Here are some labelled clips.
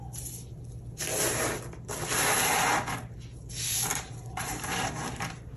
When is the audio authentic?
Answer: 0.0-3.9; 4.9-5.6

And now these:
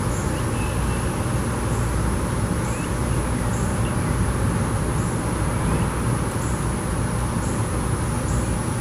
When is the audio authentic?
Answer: 0.0-3.0; 3.5-8.8